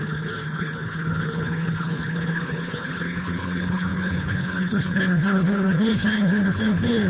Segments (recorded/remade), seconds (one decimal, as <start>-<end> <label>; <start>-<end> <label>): 0.0-7.1 remade